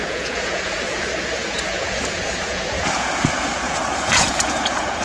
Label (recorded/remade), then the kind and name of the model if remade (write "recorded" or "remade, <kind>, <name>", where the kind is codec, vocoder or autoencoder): remade, vocoder, Vocos